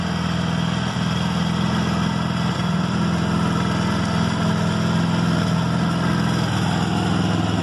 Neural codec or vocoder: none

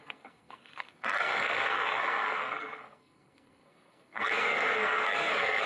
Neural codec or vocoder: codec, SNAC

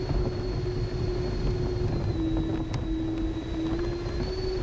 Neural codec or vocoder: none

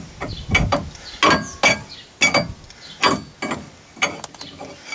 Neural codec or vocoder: none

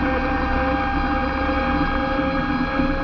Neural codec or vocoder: none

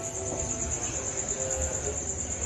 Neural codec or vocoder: none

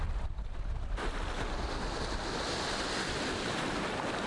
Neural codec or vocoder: none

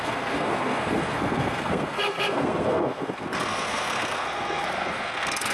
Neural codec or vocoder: codec, SNAC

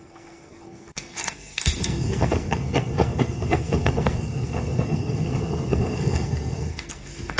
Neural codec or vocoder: codec, SNAC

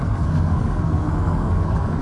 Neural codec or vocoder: codec, SNAC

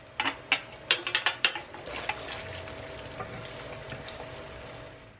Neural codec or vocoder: none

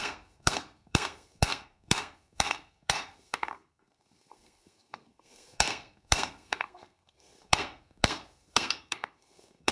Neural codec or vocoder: codec, SNAC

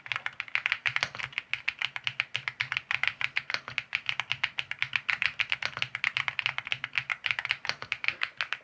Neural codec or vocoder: none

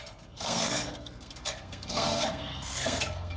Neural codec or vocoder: codec, SNAC